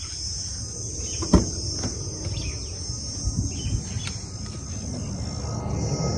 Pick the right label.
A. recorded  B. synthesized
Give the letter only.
A